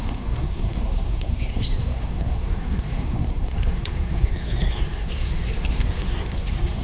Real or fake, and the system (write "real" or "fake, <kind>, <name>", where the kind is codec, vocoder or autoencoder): fake, codec, SNAC